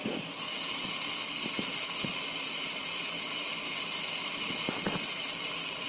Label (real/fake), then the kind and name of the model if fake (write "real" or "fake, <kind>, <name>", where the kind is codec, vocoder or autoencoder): real